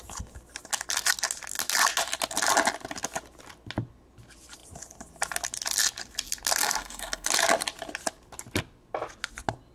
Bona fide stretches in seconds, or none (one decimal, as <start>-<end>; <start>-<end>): 0.0-6.6; 7.3-9.7